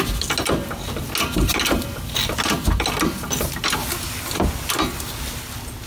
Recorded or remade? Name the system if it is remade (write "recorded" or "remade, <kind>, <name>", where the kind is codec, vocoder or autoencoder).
recorded